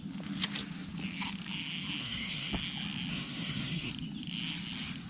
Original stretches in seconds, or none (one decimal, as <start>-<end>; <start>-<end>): 0.0-2.0; 2.5-3.1; 3.9-5.1